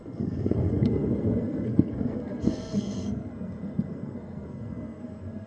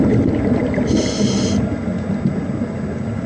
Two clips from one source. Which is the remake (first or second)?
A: first